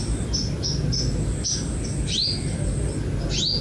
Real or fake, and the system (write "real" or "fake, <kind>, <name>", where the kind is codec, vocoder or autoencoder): real